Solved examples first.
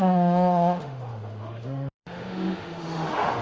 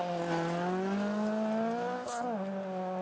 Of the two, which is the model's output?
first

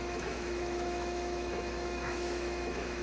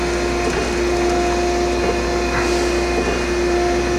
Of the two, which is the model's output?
first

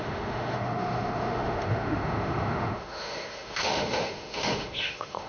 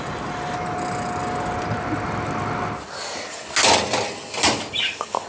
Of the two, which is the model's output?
first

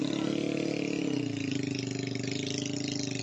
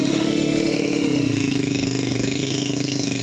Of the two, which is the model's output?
second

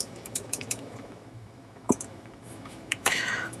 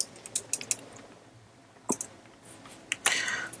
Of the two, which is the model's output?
first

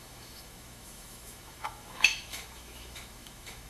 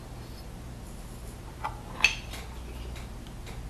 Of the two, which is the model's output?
first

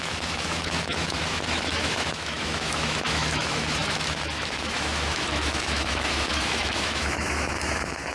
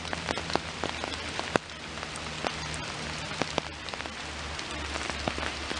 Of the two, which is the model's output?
first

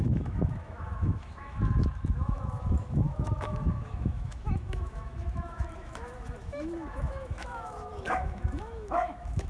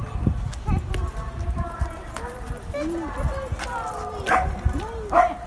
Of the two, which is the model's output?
first